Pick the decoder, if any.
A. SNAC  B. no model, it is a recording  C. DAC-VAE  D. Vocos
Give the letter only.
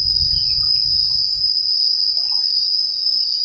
B